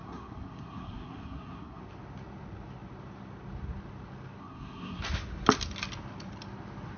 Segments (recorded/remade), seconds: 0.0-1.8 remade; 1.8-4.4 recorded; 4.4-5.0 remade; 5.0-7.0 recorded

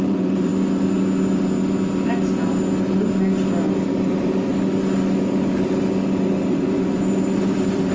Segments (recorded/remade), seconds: 0.0-0.5 remade; 0.5-3.9 recorded; 3.9-4.5 remade; 4.5-6.5 recorded; 6.5-7.9 remade

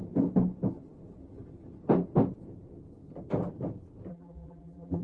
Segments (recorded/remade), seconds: 0.0-4.1 recorded; 4.1-5.0 remade

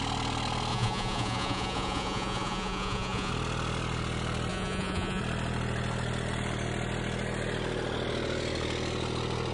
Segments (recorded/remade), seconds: 0.0-0.7 recorded; 0.7-3.3 remade; 3.3-4.5 recorded; 4.5-5.2 remade; 5.2-9.5 recorded

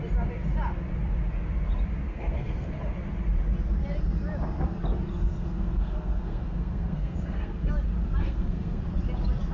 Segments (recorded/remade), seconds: 0.0-2.1 recorded; 2.1-2.7 remade; 2.7-5.2 recorded; 5.2-7.7 remade; 7.7-8.2 recorded; 8.2-8.8 remade; 8.8-9.5 recorded

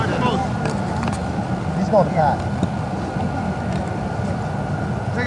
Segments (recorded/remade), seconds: 0.0-1.2 recorded; 1.2-2.5 remade; 2.5-5.3 recorded

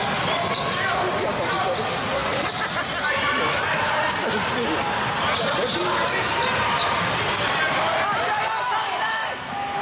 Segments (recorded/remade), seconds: 0.0-9.8 recorded

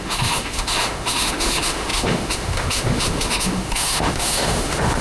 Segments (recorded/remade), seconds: 0.0-5.0 remade